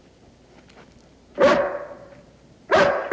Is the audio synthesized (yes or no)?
no